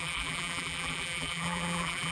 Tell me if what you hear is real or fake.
fake